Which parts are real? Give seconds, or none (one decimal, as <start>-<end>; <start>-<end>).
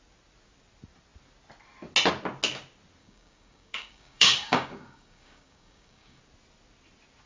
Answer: 0.0-3.0; 6.2-7.3